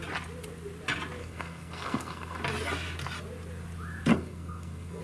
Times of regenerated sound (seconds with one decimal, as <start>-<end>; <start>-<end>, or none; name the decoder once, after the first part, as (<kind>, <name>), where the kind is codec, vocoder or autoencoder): 1.2-2.4 (codec, SNAC); 4.1-5.0